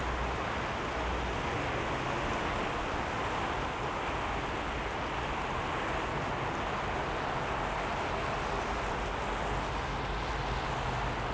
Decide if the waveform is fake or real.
real